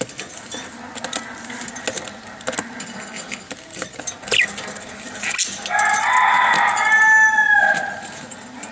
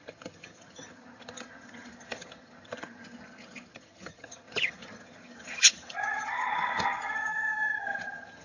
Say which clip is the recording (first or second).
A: first